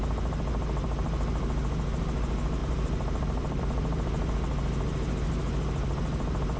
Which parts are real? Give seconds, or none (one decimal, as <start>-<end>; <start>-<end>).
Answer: 0.0-2.6; 3.6-6.6